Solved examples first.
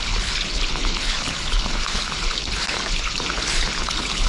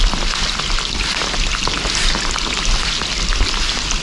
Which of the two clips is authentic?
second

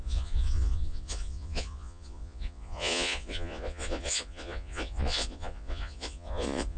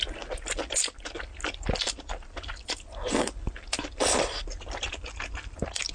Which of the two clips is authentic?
second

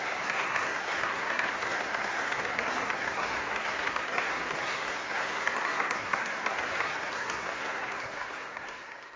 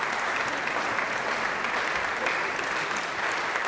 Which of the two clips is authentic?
second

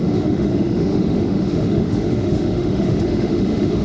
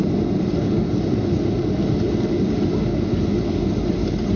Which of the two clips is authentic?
second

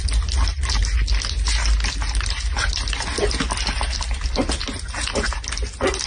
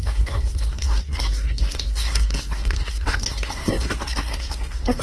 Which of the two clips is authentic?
first